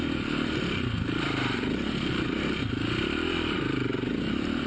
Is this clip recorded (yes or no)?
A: no